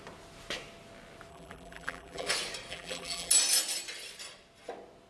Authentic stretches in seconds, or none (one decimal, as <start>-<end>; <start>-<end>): 0.0-1.3; 2.3-2.7; 3.3-5.1